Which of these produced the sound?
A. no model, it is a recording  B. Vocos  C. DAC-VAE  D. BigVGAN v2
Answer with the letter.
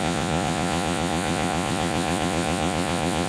B